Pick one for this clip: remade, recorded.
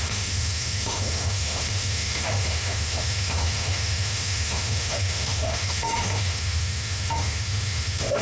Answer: remade